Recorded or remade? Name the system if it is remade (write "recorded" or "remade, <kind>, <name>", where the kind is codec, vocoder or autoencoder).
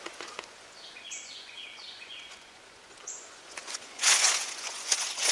remade, vocoder, Vocos